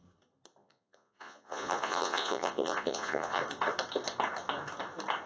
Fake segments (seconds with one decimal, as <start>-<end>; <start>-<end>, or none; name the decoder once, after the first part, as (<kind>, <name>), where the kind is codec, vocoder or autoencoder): 0.6-3.4 (vocoder, Vocos)